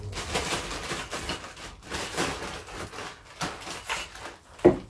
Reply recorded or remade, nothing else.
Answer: recorded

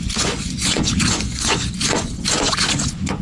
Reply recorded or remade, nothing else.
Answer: remade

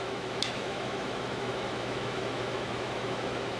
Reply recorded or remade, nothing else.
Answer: remade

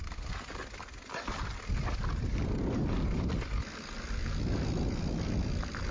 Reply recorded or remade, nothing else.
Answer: recorded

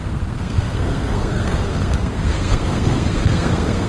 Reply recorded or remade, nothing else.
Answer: remade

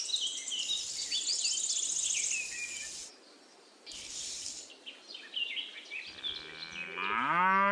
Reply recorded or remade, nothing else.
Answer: recorded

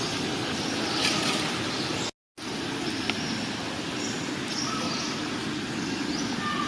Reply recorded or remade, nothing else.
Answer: recorded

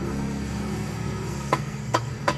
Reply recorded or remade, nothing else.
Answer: remade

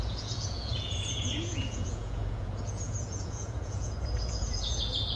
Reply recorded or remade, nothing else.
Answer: remade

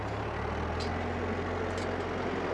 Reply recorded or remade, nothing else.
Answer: recorded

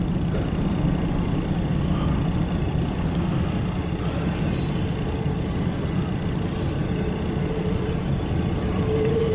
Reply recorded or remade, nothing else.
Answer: recorded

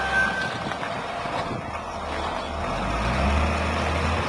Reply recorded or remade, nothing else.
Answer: recorded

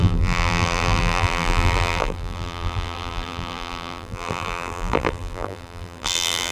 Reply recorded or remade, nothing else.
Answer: remade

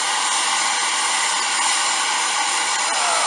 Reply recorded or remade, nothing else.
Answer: recorded